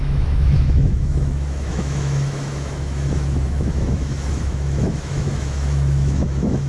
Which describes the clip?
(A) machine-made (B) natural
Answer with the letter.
A